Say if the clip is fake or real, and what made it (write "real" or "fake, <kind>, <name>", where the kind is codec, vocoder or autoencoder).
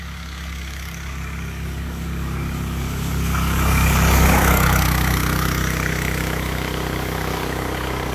fake, codec, DAC